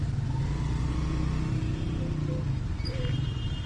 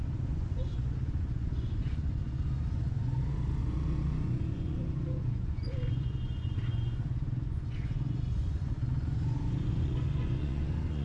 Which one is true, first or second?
first